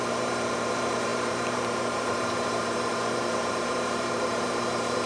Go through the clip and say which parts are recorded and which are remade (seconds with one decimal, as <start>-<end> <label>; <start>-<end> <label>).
0.0-5.1 remade